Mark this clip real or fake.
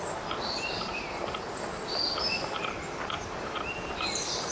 real